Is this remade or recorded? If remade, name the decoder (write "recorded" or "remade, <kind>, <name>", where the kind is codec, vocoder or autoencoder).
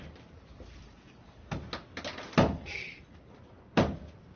recorded